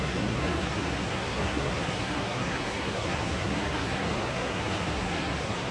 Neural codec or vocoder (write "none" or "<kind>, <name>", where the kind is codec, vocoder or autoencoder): codec, SNAC